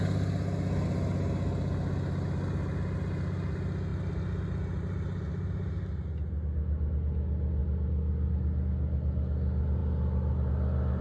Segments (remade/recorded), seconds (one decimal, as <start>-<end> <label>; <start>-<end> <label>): 0.0-11.0 recorded